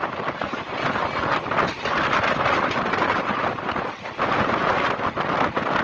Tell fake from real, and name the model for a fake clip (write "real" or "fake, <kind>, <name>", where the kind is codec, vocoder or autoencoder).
real